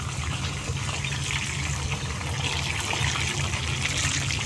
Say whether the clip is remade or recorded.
recorded